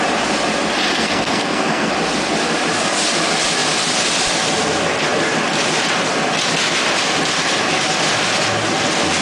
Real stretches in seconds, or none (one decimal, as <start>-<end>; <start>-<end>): 0.0-0.9; 1.9-9.2